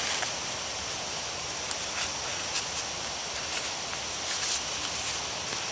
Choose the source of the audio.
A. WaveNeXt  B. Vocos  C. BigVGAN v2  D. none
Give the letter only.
D